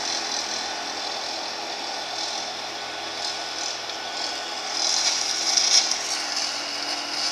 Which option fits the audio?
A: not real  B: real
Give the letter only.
B